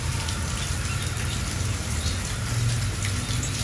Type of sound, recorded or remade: recorded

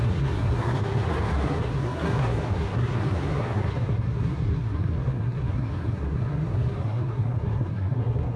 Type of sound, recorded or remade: remade